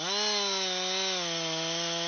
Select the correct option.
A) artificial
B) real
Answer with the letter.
B